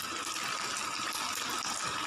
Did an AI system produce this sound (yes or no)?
no